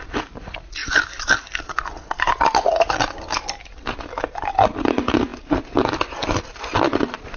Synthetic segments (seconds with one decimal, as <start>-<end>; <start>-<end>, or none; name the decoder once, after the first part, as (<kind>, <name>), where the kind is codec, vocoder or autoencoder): none